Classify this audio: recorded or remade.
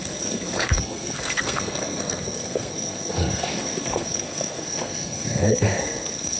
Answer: remade